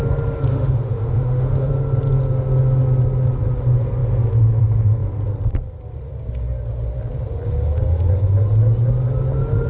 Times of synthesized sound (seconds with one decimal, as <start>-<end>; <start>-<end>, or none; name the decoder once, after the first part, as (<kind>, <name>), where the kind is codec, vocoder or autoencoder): 0.5-1.7 (autoencoder, DAC-VAE)